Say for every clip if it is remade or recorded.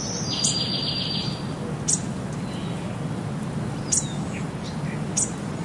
recorded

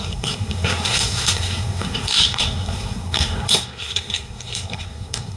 remade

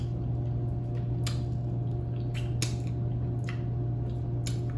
recorded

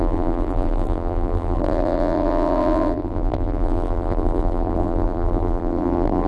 remade